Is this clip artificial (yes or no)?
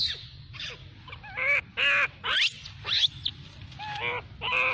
no